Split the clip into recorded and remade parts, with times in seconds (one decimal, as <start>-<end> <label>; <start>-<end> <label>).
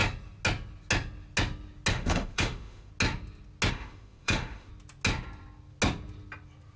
0.0-1.9 recorded; 1.9-2.9 remade; 2.9-3.7 recorded; 3.7-4.7 remade; 4.7-6.8 recorded